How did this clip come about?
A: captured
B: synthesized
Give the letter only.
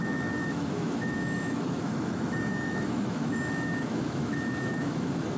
B